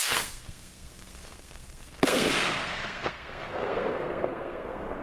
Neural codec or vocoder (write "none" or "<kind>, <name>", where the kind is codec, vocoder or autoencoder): codec, SNAC